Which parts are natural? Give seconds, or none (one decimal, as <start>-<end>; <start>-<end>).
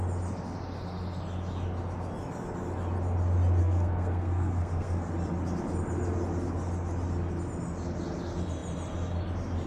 0.0-3.6; 5.1-9.7